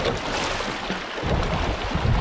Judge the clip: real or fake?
real